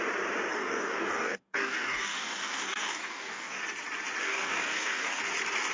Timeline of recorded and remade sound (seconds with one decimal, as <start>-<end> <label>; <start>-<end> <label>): 0.0-0.5 recorded; 0.5-3.6 remade; 3.6-4.2 recorded; 4.2-5.2 remade; 5.2-5.7 recorded